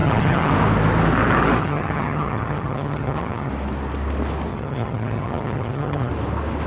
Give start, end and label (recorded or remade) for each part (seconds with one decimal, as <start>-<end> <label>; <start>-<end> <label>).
0.0-0.5 remade; 0.5-1.6 recorded; 1.6-3.5 remade; 3.5-4.5 recorded; 4.5-6.1 remade; 6.1-6.7 recorded

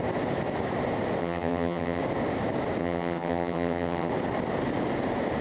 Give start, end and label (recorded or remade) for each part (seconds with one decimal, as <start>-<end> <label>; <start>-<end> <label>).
0.0-1.2 recorded; 1.2-2.0 remade; 2.0-2.8 recorded; 2.8-4.1 remade; 4.1-5.4 recorded

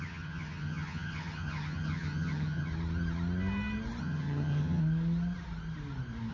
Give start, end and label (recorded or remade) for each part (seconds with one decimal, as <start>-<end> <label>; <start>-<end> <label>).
0.0-2.7 remade; 2.7-4.0 recorded; 4.0-4.8 remade; 4.8-6.3 recorded

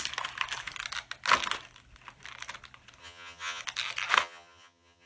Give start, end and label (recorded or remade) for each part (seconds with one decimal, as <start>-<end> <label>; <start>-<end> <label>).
0.0-3.0 recorded; 3.0-3.6 remade; 3.6-4.2 recorded; 4.2-5.1 remade